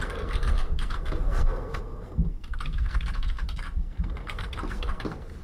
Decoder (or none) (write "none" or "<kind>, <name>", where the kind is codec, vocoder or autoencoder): codec, SNAC